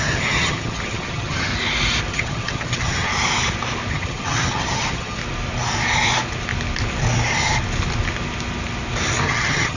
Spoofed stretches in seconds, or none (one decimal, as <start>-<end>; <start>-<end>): 0.0-1.5; 2.1-3.1; 3.9-5.2; 9.3-9.8